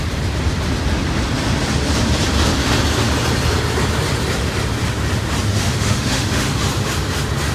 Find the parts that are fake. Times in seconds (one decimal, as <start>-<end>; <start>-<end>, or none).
5.5-6.6